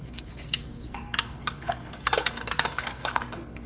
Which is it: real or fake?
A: fake